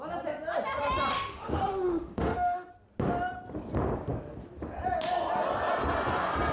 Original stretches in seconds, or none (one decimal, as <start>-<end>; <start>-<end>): 0.0-1.1; 2.7-6.5